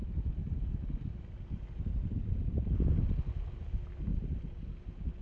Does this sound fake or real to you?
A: real